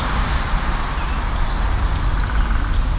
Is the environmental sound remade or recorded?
recorded